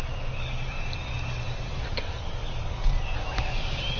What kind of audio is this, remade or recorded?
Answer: recorded